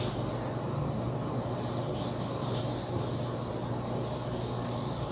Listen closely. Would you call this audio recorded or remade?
recorded